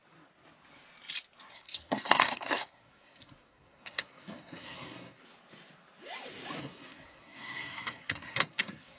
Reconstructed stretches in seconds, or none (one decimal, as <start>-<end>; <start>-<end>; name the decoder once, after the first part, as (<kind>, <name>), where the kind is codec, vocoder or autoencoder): 1.5-5.2 (codec, SNAC); 6.6-9.0